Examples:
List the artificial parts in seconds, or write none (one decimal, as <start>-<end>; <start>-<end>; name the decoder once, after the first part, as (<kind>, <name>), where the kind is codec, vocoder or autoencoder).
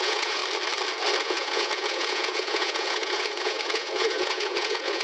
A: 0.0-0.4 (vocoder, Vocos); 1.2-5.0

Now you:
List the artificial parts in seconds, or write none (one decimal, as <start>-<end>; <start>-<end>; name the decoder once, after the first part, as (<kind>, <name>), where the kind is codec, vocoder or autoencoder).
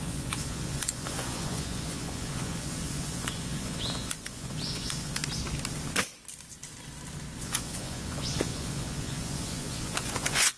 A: 0.0-5.2 (vocoder, Vocos); 7.4-10.6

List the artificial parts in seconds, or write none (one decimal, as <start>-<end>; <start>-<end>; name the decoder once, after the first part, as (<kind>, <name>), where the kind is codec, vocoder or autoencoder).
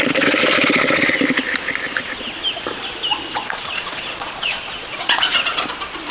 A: 3.1-5.6 (vocoder, Vocos)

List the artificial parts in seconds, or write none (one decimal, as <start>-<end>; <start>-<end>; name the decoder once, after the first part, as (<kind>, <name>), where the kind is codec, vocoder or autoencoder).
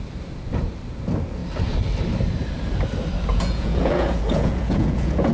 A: 3.3-5.3 (vocoder, Vocos)